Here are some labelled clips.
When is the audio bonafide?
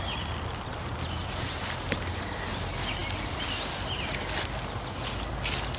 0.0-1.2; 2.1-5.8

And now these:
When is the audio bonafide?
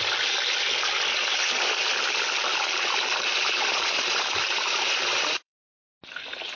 0.0-2.5; 5.8-6.6